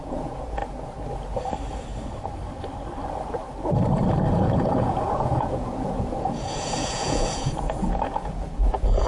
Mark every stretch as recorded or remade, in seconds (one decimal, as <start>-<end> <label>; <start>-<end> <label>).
0.0-0.6 remade; 0.6-4.3 recorded; 4.3-9.1 remade